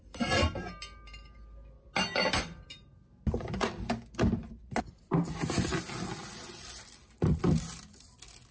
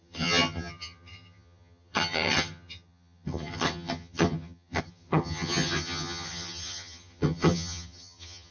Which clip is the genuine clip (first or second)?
first